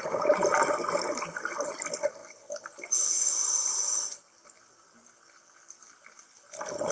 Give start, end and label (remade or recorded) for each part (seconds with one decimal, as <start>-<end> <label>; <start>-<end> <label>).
0.0-6.9 recorded